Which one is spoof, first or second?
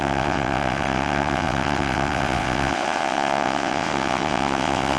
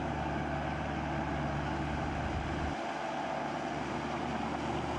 first